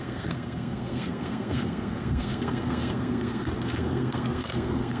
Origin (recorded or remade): remade